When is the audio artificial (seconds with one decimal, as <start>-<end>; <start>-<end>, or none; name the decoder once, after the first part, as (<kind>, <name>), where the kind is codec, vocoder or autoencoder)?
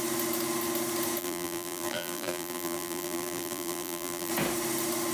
1.2-4.3 (vocoder, BigVGAN v2)